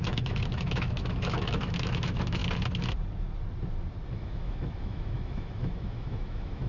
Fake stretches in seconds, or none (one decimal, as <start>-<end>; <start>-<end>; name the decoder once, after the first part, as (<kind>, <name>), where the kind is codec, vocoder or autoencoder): 0.0-2.4 (autoencoder, DAC-VAE); 4.1-6.7